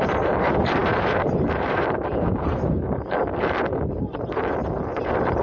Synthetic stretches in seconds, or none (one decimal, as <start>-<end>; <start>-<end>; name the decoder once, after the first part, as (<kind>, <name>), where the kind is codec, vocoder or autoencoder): 0.0-3.2 (vocoder, BigVGAN v2); 4.0-5.4